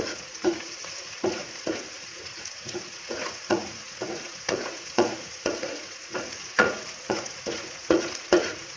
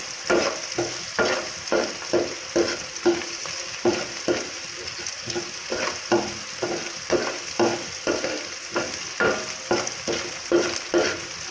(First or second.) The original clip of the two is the second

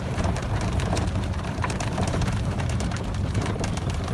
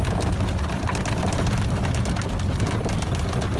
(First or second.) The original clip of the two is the second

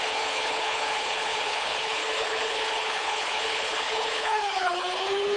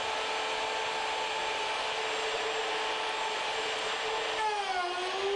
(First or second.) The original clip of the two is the second